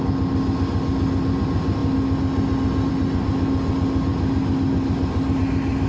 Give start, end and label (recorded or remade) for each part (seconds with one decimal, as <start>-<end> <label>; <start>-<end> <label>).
0.0-5.9 recorded